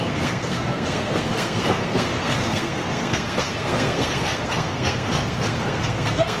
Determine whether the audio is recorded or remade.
remade